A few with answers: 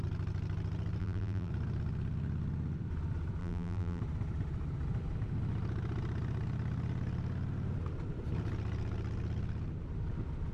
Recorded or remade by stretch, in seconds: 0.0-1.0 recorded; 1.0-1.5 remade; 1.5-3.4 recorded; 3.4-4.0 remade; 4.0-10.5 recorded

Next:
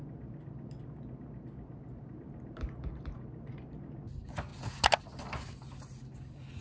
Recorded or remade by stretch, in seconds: 0.0-6.6 recorded